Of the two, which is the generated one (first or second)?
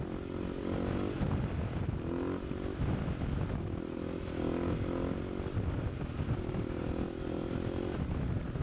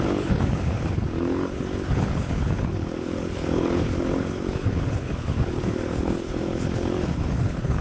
second